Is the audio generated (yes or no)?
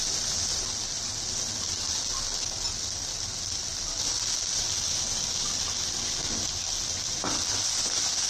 no